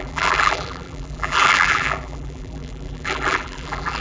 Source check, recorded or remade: remade